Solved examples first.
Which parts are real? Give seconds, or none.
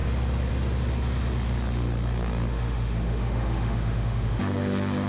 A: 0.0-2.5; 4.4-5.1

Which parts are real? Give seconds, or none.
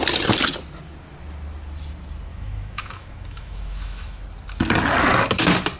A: 0.0-2.3; 4.2-5.8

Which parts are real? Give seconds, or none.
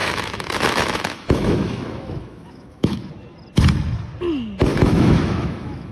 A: 3.1-4.7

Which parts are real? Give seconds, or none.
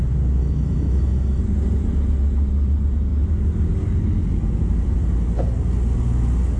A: 0.0-0.4; 1.4-6.6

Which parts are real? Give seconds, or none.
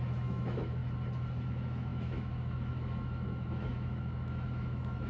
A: 0.8-1.5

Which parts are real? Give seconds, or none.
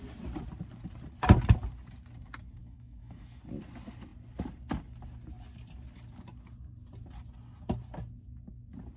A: 0.0-2.6; 3.4-9.0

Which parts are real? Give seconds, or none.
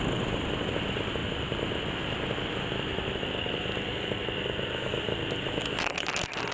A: 0.0-6.5